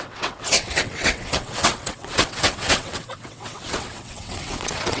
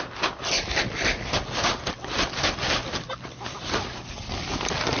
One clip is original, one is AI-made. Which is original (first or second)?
second